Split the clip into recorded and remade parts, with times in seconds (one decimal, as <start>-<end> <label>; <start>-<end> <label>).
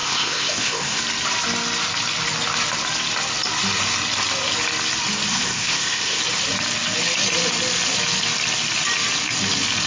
0.0-1.0 remade; 1.0-5.3 recorded; 5.3-6.2 remade; 6.2-9.9 recorded